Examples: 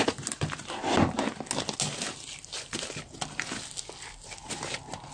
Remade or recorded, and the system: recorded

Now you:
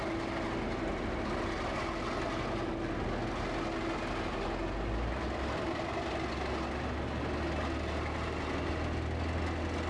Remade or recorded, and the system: recorded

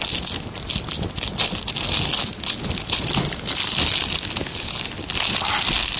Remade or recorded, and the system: recorded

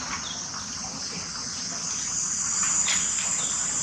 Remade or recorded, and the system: recorded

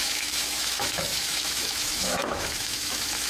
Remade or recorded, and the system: remade, autoencoder, DAC-VAE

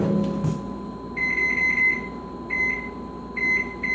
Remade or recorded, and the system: recorded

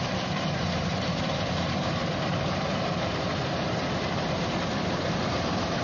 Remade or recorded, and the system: remade, vocoder, BigVGAN v2